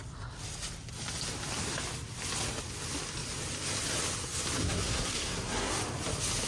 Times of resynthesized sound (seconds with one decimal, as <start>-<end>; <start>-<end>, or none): 4.6-5.7